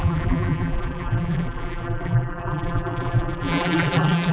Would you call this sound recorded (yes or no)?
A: no